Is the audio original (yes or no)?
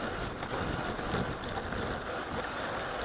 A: yes